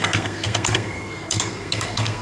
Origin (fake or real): fake